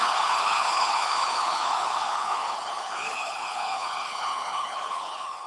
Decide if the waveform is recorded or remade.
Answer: remade